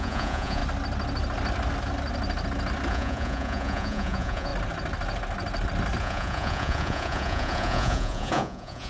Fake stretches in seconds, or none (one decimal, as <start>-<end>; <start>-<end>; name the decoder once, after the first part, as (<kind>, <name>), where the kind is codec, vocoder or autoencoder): 0.0-0.6 (vocoder, Vocos); 2.9-4.5; 6.0-8.9